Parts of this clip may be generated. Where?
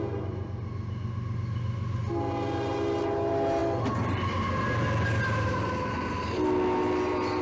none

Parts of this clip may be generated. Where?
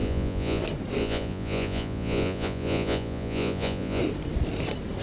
0.0-0.6 (vocoder, Vocos); 1.0-4.0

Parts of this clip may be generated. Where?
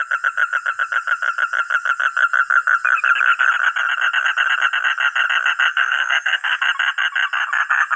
5.7-6.6 (codec, SNAC)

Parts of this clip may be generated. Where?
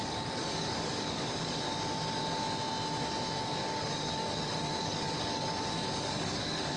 0.0-1.7 (codec, DAC); 3.4-6.8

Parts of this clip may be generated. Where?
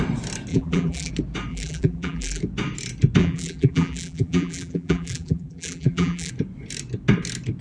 0.5-1.1 (vocoder, BigVGAN v2); 1.5-2.4; 3.2-6.3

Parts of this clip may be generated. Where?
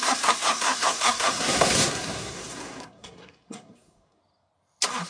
0.0-4.2 (codec, SNAC)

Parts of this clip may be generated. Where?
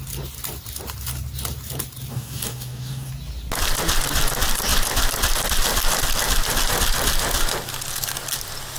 2.1-3.1 (codec, DAC)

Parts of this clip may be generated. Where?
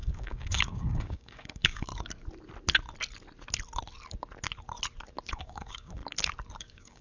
0.0-1.9 (codec, DAC); 5.3-6.0; 6.6-7.0